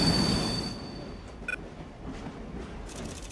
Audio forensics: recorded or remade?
recorded